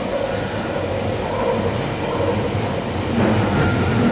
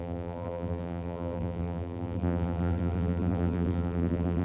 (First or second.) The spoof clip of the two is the second